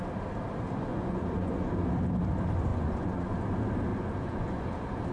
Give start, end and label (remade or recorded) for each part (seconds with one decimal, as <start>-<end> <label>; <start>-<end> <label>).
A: 0.0-0.9 recorded; 0.9-1.7 remade; 1.7-2.7 recorded; 2.7-3.5 remade; 3.5-3.9 recorded; 3.9-4.6 remade; 4.6-5.1 recorded